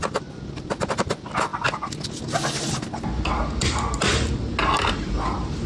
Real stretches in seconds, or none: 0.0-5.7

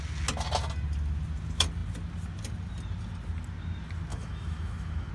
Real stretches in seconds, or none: 0.0-4.1

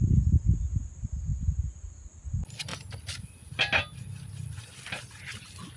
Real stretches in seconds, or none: 0.0-5.8

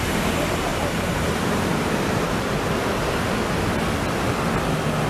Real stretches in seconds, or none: 0.0-0.7; 2.9-5.1

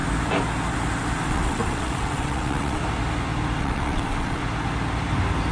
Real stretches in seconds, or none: 0.0-1.3; 2.8-3.6; 4.4-5.5

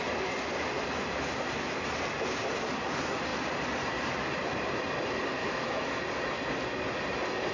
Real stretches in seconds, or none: 0.0-5.4; 5.9-7.5

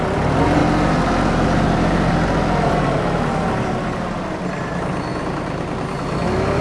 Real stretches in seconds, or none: 0.0-6.6